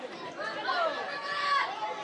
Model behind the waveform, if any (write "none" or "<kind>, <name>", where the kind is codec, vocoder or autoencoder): none